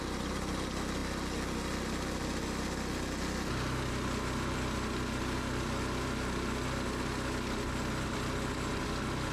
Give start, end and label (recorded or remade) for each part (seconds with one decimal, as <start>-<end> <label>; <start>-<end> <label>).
0.0-9.3 recorded